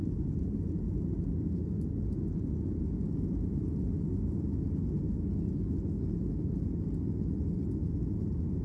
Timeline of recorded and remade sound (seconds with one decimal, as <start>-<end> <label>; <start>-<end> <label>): 0.0-1.3 remade; 1.3-8.6 recorded